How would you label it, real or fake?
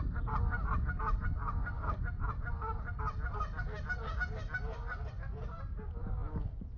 real